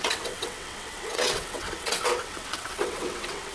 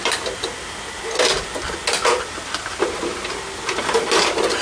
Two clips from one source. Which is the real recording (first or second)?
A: second